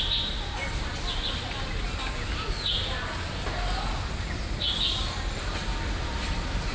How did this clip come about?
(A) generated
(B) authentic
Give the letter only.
B